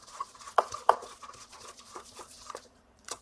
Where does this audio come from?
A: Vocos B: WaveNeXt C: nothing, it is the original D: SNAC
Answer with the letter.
A